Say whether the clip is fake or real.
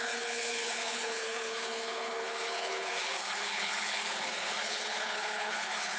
fake